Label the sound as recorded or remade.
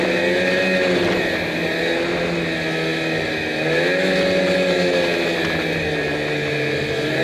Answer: recorded